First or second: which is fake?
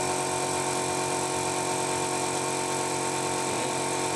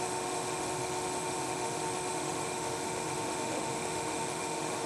second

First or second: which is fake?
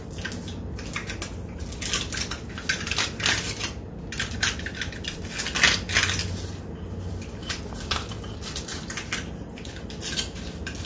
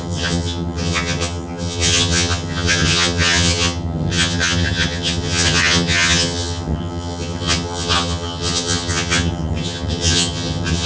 second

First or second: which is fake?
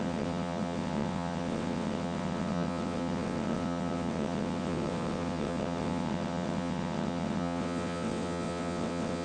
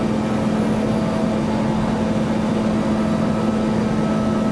first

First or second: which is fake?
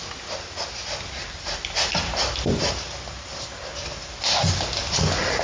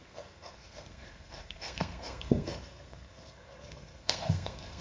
second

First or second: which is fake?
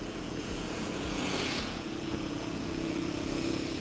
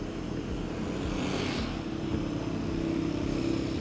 first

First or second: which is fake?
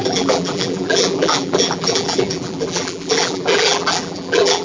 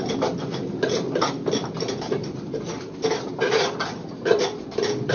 first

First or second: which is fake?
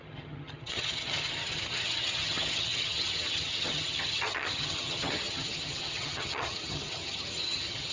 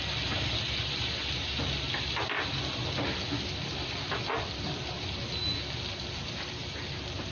first